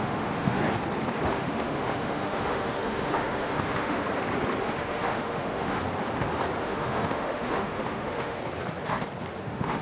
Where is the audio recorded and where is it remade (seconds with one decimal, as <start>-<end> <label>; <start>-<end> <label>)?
0.0-0.6 remade; 0.6-1.3 recorded; 1.3-4.0 remade; 4.0-4.6 recorded; 4.6-5.8 remade; 5.8-6.6 recorded; 6.6-8.4 remade; 8.4-9.4 recorded; 9.4-9.8 remade